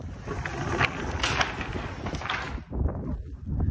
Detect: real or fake real